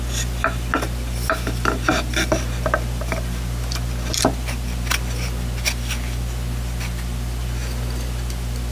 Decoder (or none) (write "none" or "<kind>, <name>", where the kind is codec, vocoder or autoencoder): none